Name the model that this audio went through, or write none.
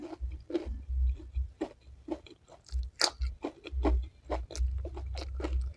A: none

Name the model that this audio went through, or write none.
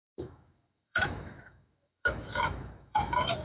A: autoencoder, DAC-VAE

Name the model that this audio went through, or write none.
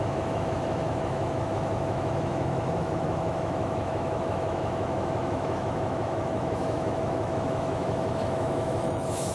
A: autoencoder, DAC-VAE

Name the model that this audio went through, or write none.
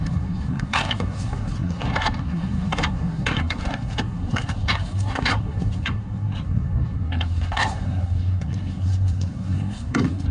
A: codec, SNAC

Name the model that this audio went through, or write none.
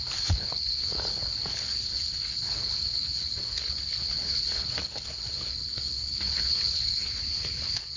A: codec, HILCodec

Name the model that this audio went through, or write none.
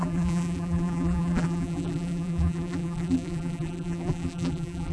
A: vocoder, BigVGAN v2